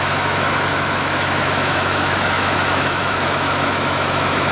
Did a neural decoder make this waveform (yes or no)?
yes